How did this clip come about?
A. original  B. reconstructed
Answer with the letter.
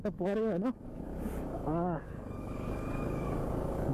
B